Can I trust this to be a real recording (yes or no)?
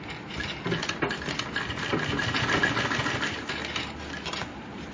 yes